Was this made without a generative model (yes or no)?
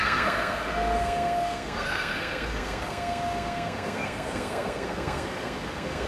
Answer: no